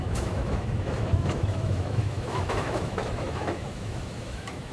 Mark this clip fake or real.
fake